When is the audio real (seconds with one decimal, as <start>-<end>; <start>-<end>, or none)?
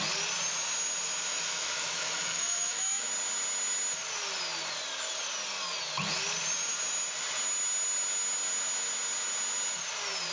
0.0-1.3; 3.1-10.3